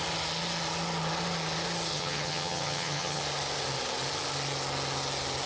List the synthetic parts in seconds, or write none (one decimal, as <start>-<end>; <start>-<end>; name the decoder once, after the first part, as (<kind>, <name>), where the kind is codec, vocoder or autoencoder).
1.9-3.2 (vocoder, HiFi-GAN)